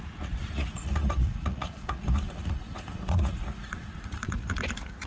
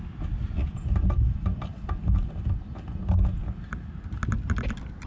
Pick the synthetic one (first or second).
first